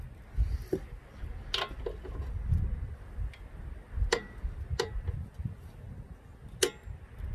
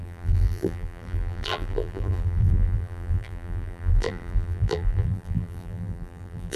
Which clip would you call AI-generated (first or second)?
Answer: second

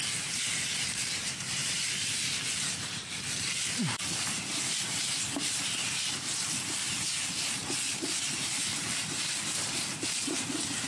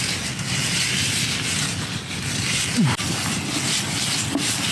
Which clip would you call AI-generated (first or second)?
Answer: first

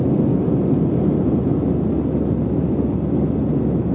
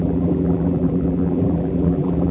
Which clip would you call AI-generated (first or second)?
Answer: second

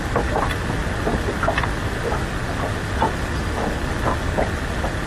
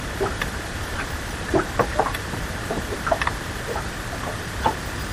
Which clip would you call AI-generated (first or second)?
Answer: second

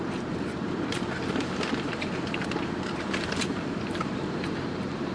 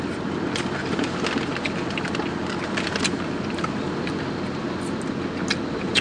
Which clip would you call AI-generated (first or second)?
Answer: first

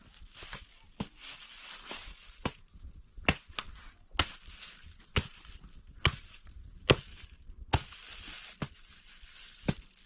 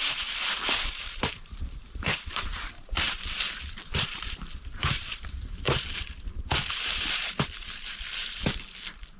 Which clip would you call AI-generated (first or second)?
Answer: second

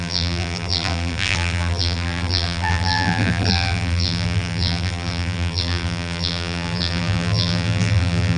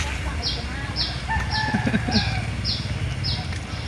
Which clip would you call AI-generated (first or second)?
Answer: first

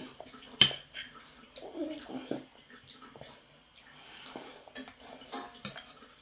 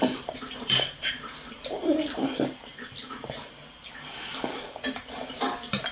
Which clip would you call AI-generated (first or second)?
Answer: second